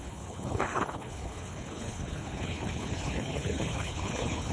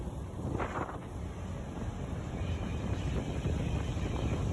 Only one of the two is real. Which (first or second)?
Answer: second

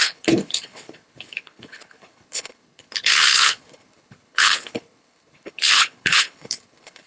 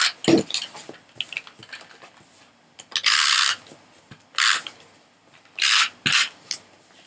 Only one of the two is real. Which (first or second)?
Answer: second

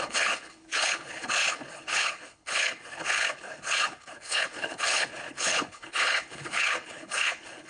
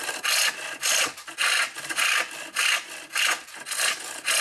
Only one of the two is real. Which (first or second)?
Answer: second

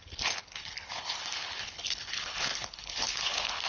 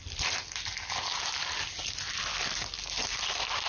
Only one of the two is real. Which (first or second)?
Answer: second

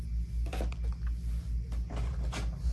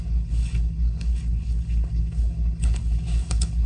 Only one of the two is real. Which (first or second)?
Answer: first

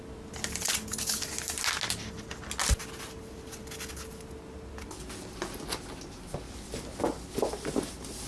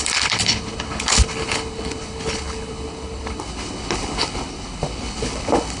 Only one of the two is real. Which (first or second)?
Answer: first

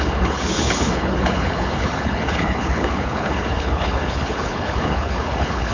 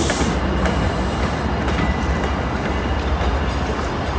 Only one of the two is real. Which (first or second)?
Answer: second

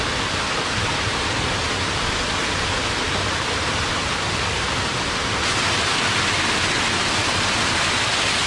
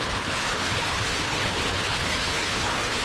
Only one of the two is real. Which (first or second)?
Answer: first